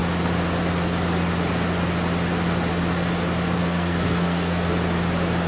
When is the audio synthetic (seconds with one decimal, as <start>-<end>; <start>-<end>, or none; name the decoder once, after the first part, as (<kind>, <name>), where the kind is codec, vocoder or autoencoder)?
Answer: 3.6-4.7 (codec, SNAC)